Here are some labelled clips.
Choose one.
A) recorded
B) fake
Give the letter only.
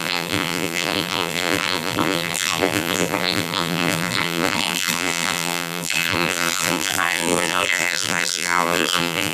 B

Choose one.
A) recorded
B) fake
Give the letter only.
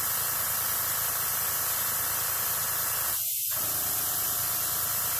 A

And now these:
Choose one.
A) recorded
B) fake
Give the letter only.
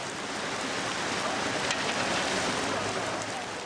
A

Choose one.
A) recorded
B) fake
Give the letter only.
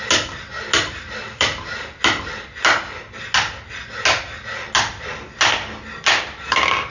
A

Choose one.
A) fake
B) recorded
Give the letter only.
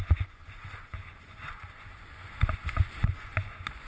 A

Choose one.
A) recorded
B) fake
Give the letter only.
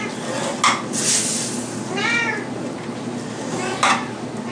A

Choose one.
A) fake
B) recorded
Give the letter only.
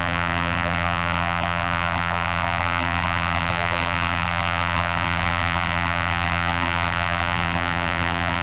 A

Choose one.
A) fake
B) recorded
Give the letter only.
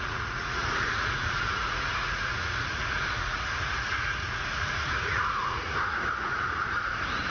A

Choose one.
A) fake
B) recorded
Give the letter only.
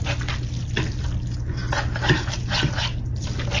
B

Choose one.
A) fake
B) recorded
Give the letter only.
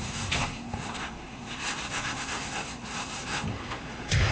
A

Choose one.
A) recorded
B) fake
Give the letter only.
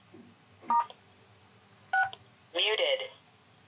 A